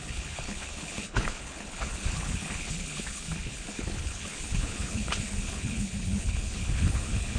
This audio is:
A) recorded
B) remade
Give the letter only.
B